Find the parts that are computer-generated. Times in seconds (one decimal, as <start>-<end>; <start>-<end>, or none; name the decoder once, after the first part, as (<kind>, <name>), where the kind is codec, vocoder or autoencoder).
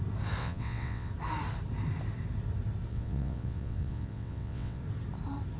0.4-1.1 (vocoder, WaveNeXt); 2.9-4.8